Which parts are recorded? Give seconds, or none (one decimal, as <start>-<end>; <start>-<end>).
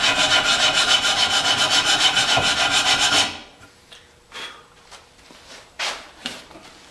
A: 0.0-3.4; 6.5-6.9